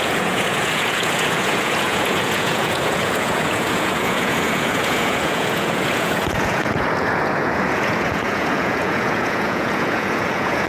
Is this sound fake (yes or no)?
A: yes